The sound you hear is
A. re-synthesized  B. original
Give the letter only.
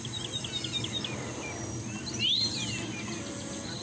B